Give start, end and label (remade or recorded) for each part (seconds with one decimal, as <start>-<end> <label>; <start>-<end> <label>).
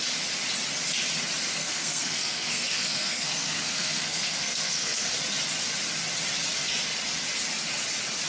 0.0-1.5 recorded; 1.5-5.2 remade; 5.2-8.3 recorded